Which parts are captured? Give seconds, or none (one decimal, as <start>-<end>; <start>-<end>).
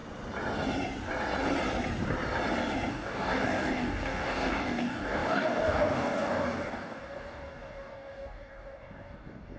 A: 0.0-2.9